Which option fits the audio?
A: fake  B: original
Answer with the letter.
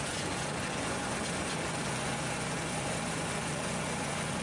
A